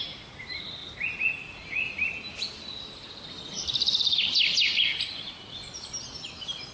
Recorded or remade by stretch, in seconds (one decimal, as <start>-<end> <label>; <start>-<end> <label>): 0.0-6.7 recorded